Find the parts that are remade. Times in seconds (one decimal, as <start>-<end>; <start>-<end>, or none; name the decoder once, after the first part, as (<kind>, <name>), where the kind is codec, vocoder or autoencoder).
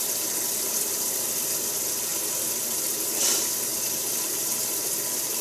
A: 0.0-2.1 (vocoder, BigVGAN v2); 2.8-3.7; 4.2-5.4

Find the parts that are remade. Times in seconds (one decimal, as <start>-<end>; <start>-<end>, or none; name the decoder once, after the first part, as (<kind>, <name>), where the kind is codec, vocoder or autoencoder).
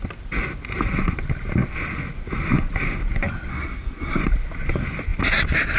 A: 3.5-4.2 (codec, SNAC)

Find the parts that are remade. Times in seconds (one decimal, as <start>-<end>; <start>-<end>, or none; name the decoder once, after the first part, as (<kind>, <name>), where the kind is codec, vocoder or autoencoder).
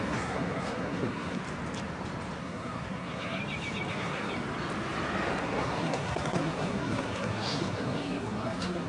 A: 0.0-1.4 (codec, SNAC); 2.4-3.4; 3.9-4.3; 5.4-8.9